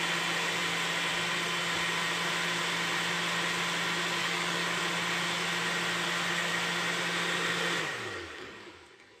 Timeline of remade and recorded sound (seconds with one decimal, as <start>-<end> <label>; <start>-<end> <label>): 0.0-4.2 recorded; 4.2-4.8 remade; 4.8-7.9 recorded; 7.9-9.2 remade